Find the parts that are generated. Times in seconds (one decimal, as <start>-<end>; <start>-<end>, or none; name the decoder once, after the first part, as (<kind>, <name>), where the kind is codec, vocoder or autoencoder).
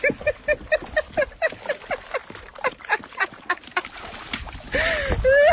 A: 2.2-3.6 (vocoder, BigVGAN v2)